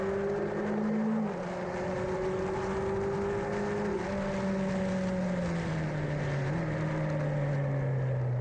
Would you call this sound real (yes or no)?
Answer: yes